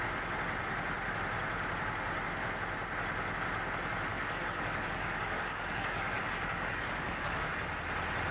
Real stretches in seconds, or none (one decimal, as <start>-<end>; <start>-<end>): 0.0-4.1; 7.6-8.3